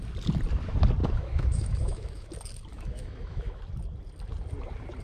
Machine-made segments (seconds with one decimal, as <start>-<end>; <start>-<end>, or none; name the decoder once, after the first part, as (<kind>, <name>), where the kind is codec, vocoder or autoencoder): 1.0-2.3 (autoencoder, DAC-VAE); 2.7-3.6